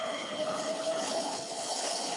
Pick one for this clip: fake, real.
fake